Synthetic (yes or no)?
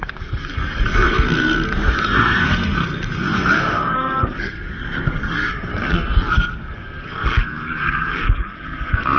yes